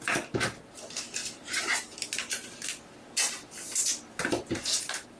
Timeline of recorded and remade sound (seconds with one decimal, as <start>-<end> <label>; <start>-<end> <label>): 0.0-5.2 recorded